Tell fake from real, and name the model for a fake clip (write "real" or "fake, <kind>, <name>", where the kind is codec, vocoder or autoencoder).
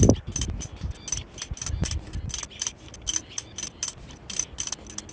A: real